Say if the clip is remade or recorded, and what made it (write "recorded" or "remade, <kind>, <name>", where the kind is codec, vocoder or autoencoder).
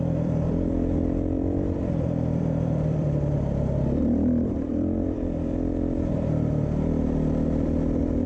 remade, vocoder, BigVGAN v2